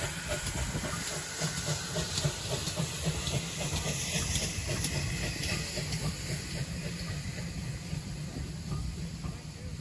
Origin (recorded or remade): recorded